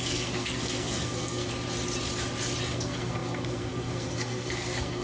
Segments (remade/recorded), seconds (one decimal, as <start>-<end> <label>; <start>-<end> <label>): 0.0-1.5 remade; 1.5-2.7 recorded; 2.7-5.0 remade